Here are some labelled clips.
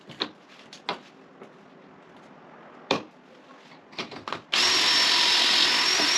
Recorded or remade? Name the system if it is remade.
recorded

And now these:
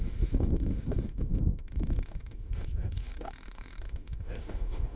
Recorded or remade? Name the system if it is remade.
remade, autoencoder, DAC-VAE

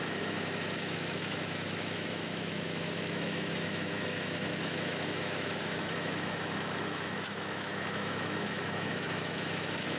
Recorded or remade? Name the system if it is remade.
remade, autoencoder, DAC-VAE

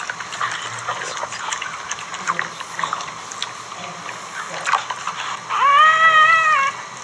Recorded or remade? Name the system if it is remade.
recorded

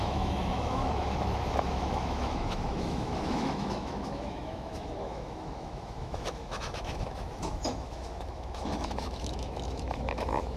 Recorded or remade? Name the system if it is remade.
remade, autoencoder, DAC-VAE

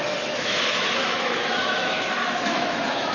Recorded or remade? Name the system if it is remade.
remade, autoencoder, DAC-VAE